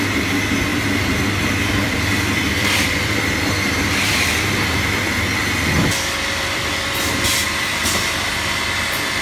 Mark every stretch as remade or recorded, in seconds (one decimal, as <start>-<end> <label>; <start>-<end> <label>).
0.0-0.7 recorded; 0.7-3.2 remade; 3.2-5.4 recorded; 5.4-7.1 remade; 7.1-9.2 recorded